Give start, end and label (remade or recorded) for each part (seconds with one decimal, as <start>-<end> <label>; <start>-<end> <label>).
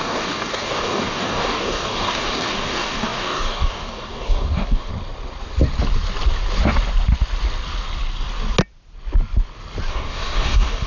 0.0-4.9 remade; 4.9-9.9 recorded; 9.9-10.9 remade